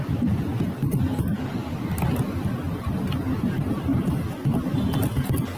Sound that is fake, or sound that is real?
real